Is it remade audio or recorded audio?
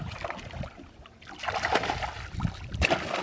recorded